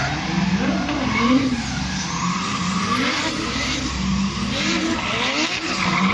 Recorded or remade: recorded